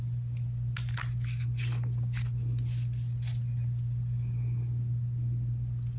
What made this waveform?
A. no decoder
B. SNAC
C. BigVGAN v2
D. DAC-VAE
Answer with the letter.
A